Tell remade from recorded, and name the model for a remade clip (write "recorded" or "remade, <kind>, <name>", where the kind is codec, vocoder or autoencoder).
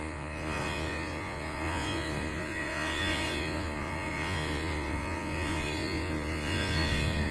remade, vocoder, Vocos